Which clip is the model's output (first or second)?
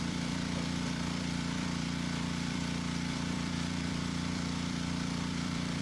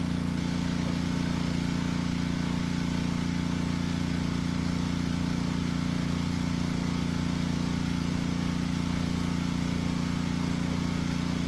first